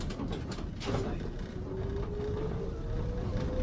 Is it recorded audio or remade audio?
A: recorded